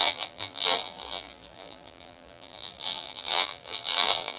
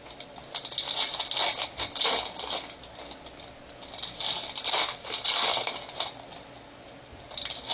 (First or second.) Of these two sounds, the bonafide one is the second